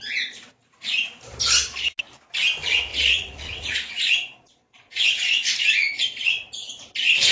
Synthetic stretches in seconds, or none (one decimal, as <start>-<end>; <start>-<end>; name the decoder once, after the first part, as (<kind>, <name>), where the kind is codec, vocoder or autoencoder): 2.9-5.6 (vocoder, Vocos)